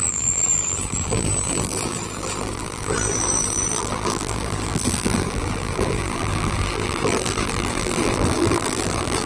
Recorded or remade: remade